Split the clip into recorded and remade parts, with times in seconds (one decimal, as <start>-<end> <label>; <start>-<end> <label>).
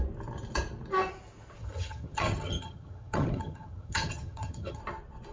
0.0-1.6 recorded; 1.6-4.8 remade; 4.8-5.3 recorded